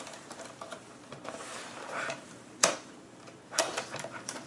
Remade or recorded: remade